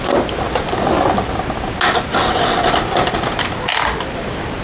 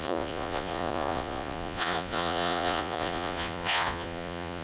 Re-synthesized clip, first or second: second